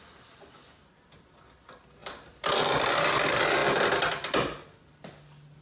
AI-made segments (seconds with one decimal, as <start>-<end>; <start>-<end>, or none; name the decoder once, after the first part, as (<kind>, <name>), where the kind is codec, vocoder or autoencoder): none